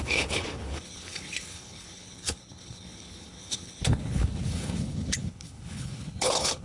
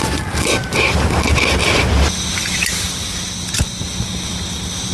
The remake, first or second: first